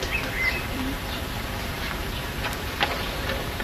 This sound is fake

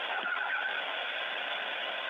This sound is real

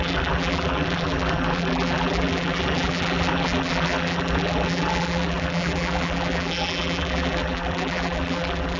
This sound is fake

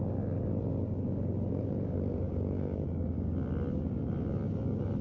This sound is real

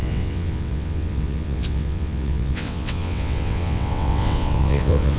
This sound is fake